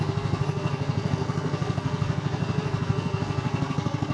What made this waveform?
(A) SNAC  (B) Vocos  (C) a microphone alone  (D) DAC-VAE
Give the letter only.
A